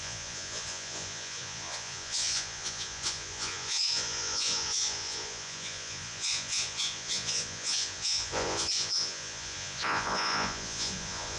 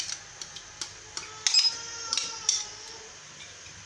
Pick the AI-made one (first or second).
first